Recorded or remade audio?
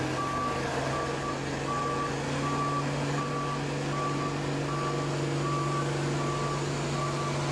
recorded